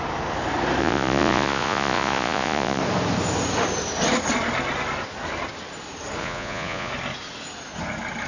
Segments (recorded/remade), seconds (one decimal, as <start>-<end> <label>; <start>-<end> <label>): 0.0-0.8 recorded; 0.8-2.8 remade; 2.8-6.2 recorded; 6.2-6.9 remade; 6.9-8.3 recorded